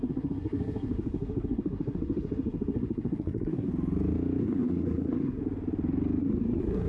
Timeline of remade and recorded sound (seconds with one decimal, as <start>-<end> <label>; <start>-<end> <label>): 0.0-3.7 remade; 3.7-4.4 recorded; 4.4-5.4 remade; 5.4-6.2 recorded; 6.2-6.9 remade

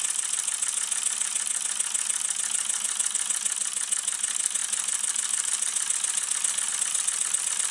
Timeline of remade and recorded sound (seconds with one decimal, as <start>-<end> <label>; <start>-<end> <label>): 0.0-7.7 recorded